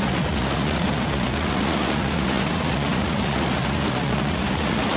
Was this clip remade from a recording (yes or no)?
yes